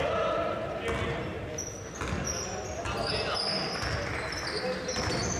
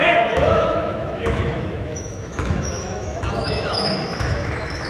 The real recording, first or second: first